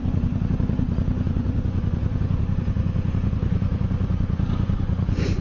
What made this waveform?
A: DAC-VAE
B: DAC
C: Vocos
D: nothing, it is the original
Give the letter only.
C